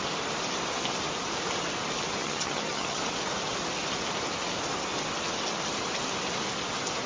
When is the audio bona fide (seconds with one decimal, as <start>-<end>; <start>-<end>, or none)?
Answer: 0.0-2.2; 3.0-7.1